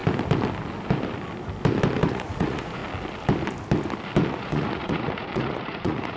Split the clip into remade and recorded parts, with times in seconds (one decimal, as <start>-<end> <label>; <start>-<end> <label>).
0.0-2.1 recorded; 2.1-2.8 remade; 2.8-4.3 recorded; 4.3-6.2 remade